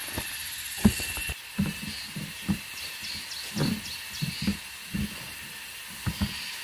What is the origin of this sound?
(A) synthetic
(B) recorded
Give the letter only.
B